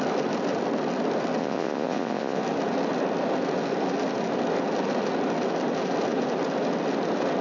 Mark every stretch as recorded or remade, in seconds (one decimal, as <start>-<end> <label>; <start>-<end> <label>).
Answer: 0.0-1.4 recorded; 1.4-2.4 remade; 2.4-7.4 recorded